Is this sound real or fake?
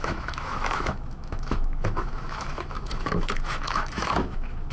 fake